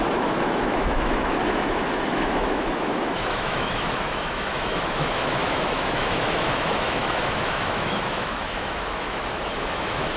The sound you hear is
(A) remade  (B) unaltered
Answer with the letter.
A